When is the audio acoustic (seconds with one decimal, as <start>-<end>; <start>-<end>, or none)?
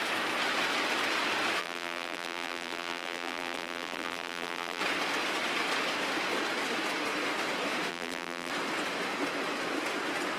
0.0-1.6; 4.8-7.9; 8.5-10.4